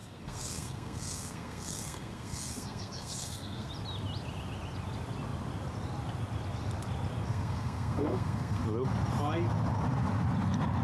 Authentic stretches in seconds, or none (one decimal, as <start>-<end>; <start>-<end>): 3.7-7.3; 8.6-10.8